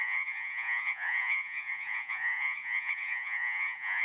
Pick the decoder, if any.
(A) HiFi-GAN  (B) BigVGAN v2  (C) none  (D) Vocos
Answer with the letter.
D